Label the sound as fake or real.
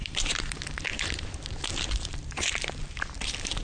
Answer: fake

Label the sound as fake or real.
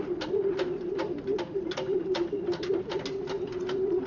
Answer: real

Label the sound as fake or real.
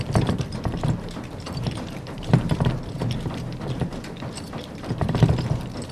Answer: fake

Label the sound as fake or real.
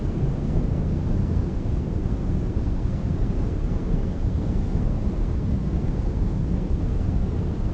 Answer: fake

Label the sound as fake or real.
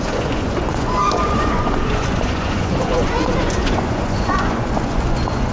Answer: fake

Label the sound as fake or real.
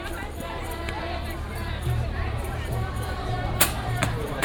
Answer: fake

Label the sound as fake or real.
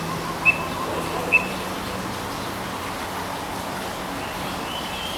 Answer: real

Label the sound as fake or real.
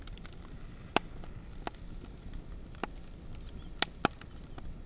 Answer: real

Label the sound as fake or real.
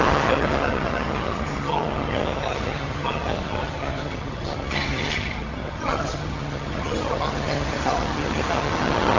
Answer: fake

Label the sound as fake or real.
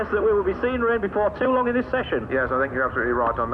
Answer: real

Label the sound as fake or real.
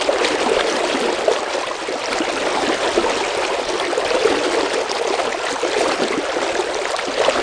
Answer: real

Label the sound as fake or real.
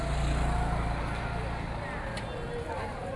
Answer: real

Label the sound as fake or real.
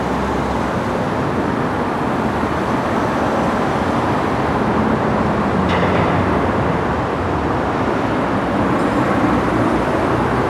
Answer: real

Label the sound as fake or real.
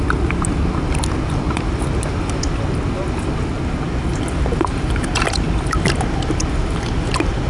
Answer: real